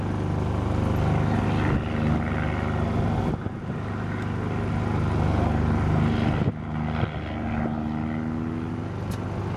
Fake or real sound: real